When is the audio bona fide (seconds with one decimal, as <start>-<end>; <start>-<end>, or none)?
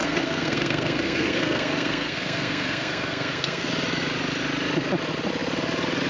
3.7-6.1